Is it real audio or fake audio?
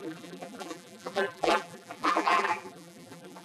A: fake